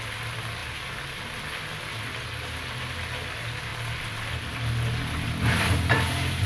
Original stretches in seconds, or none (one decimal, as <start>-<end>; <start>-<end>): 0.0-6.5